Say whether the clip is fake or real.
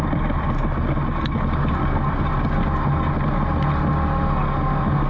real